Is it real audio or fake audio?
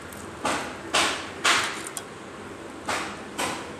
real